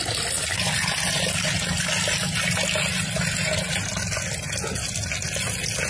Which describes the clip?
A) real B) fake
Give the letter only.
A